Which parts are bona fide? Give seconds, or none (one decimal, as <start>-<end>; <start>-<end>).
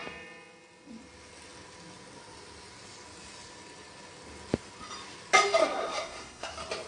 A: 0.0-5.6; 6.5-6.9